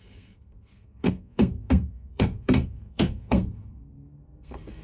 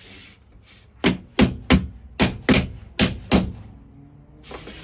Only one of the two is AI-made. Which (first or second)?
first